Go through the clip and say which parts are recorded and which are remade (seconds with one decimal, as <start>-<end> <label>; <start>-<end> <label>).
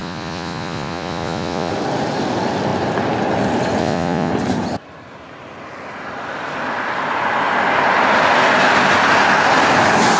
0.0-1.7 remade; 1.7-3.8 recorded; 3.8-4.3 remade; 4.3-10.2 recorded